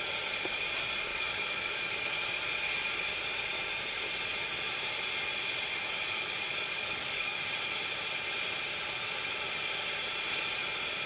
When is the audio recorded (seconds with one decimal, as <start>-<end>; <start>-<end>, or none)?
0.0-1.1; 2.2-6.5; 7.4-11.1